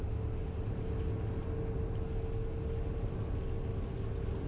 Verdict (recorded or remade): recorded